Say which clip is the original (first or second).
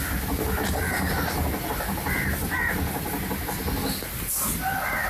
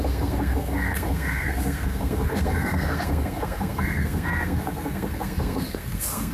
first